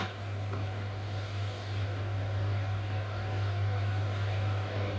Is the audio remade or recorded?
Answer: remade